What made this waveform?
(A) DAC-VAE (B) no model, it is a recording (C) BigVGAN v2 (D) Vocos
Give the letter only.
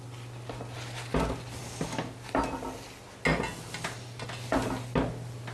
B